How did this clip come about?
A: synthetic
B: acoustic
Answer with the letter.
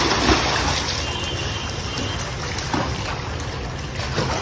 B